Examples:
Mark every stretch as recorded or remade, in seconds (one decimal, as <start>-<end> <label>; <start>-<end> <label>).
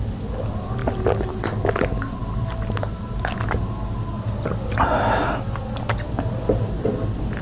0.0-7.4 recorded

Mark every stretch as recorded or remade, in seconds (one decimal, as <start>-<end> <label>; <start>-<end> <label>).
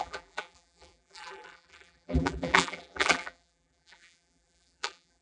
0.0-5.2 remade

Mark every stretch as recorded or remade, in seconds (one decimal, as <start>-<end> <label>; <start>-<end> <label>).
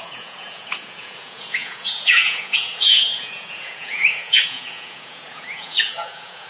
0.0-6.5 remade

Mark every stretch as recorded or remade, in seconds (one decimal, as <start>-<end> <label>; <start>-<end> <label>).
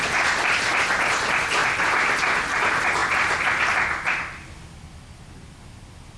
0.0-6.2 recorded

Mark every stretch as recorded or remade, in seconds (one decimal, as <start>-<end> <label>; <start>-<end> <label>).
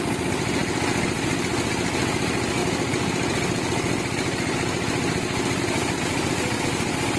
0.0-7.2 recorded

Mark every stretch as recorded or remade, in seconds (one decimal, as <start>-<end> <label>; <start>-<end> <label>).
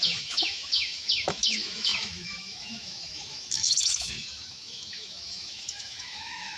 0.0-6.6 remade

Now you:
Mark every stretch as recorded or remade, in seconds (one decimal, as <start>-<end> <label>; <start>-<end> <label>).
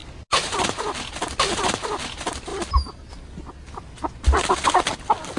0.0-5.4 recorded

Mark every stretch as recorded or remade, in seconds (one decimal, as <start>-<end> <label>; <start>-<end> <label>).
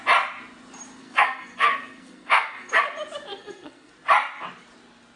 0.0-1.0 recorded; 1.0-2.7 remade; 2.7-3.3 recorded; 3.3-3.9 remade; 3.9-5.2 recorded